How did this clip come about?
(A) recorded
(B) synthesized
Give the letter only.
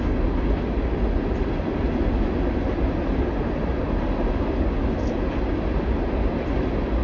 A